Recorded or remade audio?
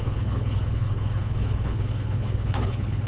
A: remade